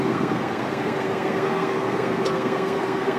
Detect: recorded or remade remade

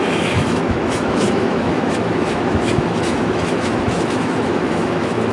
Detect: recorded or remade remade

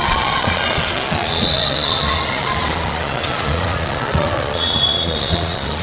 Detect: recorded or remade remade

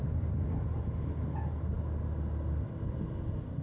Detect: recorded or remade recorded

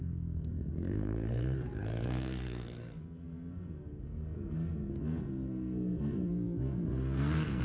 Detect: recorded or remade remade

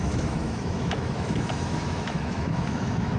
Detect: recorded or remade remade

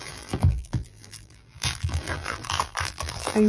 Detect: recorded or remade remade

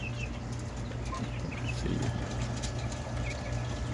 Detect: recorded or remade recorded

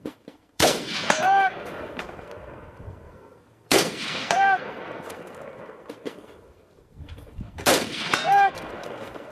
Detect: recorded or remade remade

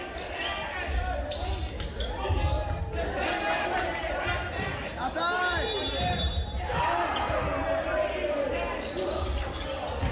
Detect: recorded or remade recorded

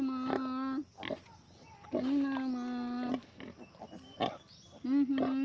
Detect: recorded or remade recorded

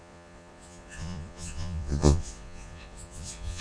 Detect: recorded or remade remade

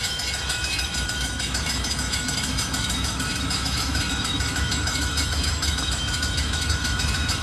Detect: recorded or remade remade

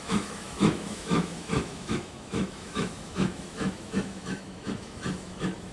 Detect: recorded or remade remade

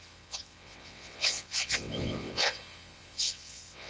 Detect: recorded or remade remade